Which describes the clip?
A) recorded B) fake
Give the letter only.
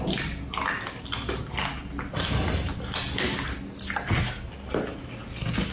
A